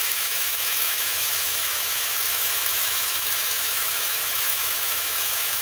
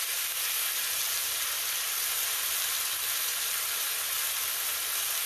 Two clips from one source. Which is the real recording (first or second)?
second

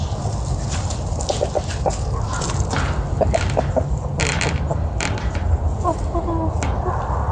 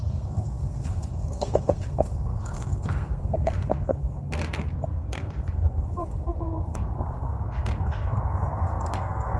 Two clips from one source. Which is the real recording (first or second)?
first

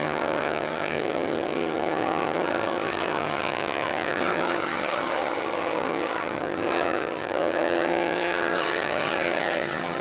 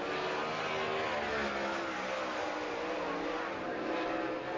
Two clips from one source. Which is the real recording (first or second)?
second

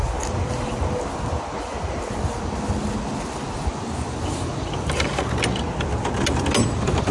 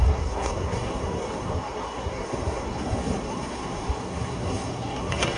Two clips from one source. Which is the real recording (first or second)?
first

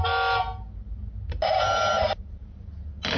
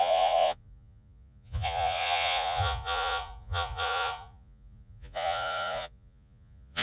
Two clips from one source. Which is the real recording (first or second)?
first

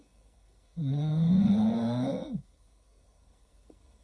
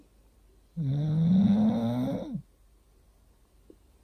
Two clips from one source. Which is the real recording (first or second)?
second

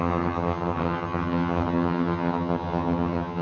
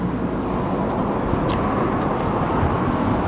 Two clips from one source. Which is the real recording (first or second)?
second